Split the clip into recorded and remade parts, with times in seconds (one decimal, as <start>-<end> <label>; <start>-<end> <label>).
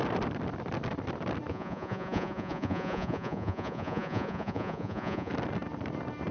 0.0-1.5 recorded; 1.5-5.3 remade; 5.3-6.3 recorded